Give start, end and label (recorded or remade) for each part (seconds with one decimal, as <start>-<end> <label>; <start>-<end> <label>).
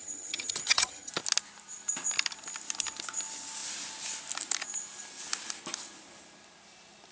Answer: 0.0-1.1 remade; 1.1-7.1 recorded